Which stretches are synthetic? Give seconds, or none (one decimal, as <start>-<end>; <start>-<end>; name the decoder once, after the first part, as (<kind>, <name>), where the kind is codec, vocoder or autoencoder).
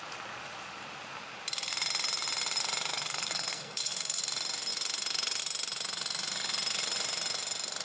2.9-4.2 (codec, SNAC)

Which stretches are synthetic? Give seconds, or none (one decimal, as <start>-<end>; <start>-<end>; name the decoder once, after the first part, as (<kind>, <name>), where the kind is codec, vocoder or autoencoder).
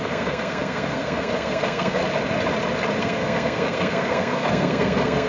0.0-2.0 (codec, SNAC); 3.0-5.3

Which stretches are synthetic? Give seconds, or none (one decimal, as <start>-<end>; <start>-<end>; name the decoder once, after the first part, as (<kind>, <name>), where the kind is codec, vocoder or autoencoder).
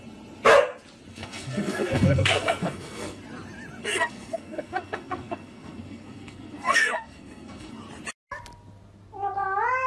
1.1-3.2 (codec, SNAC); 3.8-7.8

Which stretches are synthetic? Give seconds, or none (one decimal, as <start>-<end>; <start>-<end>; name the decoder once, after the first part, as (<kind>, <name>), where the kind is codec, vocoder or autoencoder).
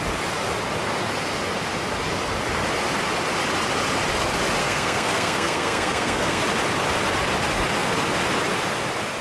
4.6-6.4 (codec, SNAC)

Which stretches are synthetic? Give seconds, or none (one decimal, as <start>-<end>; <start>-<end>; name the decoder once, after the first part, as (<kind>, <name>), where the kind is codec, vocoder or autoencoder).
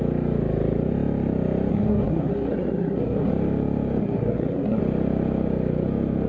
1.7-3.3 (codec, SNAC); 4.0-4.8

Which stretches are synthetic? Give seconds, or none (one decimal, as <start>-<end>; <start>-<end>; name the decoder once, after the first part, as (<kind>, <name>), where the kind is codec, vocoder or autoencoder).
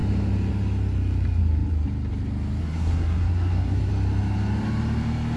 2.6-3.9 (codec, SNAC)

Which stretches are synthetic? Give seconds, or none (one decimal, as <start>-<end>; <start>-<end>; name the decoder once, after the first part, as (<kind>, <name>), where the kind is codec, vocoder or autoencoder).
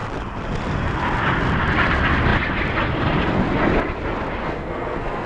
4.4-5.3 (codec, SNAC)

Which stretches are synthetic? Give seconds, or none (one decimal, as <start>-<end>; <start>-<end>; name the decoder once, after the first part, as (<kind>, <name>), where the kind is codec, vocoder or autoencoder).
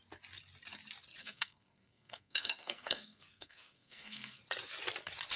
1.2-4.4 (codec, SNAC)